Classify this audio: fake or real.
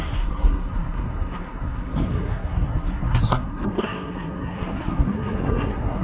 fake